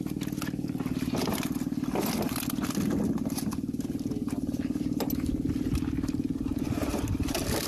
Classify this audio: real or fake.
real